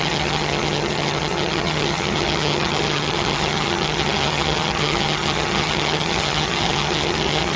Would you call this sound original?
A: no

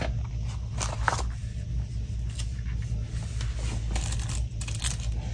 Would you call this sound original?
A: yes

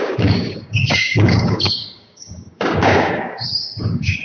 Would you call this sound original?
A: no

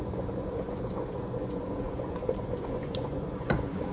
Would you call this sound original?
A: no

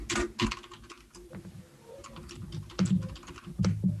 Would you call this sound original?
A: yes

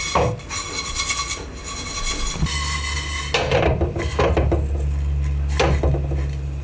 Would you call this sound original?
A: yes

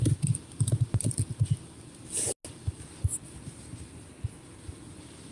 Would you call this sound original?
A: yes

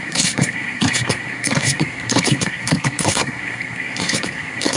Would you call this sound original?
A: no